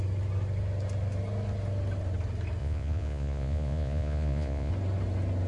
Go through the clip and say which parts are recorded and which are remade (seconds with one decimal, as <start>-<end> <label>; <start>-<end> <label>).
0.0-2.6 recorded; 2.6-4.7 remade; 4.7-5.5 recorded